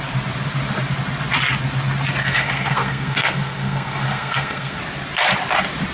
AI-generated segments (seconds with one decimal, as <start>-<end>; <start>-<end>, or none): 2.2-4.8